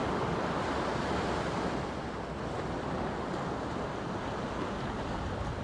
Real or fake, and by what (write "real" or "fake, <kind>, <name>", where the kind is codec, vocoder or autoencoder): real